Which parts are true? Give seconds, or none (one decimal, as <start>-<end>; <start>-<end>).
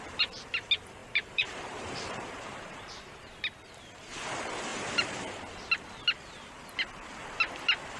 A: 0.0-1.0; 3.4-4.7; 5.4-8.0